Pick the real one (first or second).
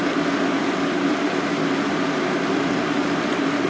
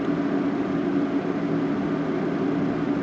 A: second